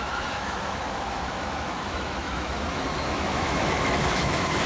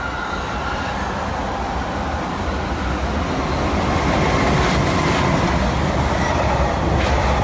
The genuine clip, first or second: second